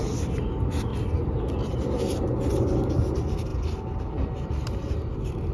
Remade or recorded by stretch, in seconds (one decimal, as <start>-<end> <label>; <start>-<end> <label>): 0.0-5.5 recorded